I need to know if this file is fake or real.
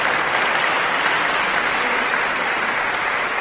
real